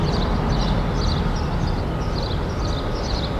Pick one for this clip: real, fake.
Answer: real